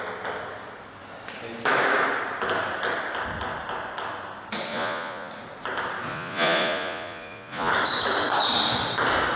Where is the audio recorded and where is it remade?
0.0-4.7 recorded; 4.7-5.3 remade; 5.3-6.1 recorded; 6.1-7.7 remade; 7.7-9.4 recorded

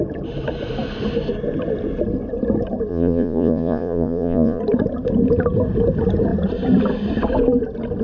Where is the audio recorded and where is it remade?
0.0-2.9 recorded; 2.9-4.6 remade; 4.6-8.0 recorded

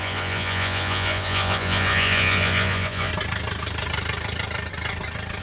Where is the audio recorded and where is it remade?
0.0-3.1 remade; 3.1-5.4 recorded

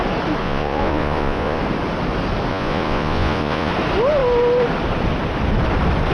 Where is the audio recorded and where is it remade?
0.0-0.4 recorded; 0.4-1.6 remade; 1.6-2.5 recorded; 2.5-3.7 remade; 3.7-6.1 recorded